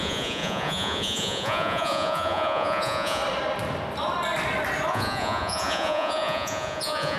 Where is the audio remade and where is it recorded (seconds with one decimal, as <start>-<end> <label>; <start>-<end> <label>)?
0.0-3.2 remade; 3.2-4.9 recorded; 4.9-7.2 remade